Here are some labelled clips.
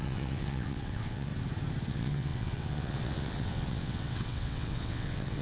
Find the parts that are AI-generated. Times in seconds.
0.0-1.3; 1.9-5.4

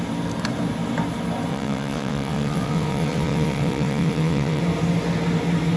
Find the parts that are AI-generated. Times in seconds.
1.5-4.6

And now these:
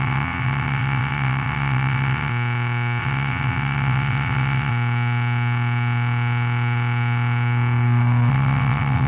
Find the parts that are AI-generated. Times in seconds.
0.0-2.3; 3.0-4.7; 8.3-9.1

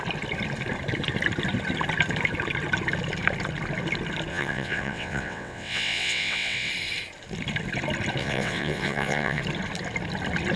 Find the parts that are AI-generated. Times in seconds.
4.3-6.7; 8.2-9.4